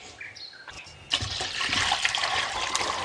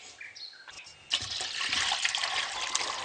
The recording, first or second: second